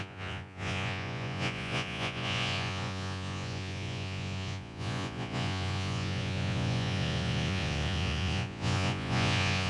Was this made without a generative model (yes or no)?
no